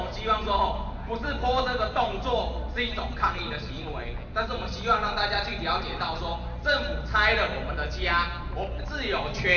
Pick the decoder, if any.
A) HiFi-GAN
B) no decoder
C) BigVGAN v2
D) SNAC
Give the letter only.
B